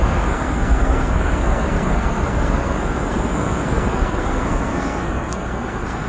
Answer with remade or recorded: remade